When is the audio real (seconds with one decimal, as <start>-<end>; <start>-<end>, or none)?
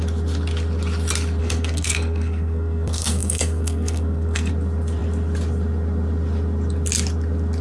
0.0-1.4; 4.5-7.6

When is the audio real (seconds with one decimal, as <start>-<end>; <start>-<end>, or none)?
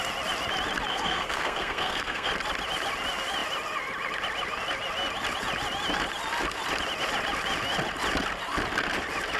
0.0-0.9; 2.3-9.4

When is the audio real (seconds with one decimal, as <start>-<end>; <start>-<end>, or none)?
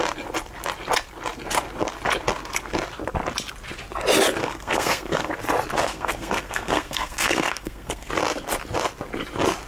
0.0-4.4; 5.3-5.8; 8.1-9.7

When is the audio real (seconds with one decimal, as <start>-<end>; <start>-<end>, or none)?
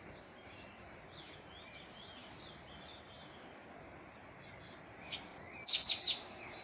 0.0-6.6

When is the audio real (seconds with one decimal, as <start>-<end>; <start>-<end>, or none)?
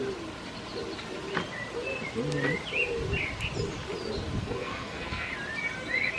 0.0-4.4; 5.3-6.2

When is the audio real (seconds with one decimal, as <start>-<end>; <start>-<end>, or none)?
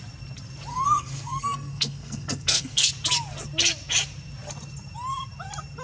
0.0-0.7; 2.9-5.8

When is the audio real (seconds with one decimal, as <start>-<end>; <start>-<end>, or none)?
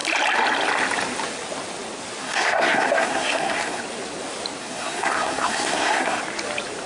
0.0-2.2; 3.8-4.6; 6.2-6.9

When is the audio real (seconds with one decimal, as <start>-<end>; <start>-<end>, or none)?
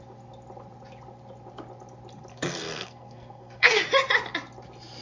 0.0-2.3; 3.8-5.0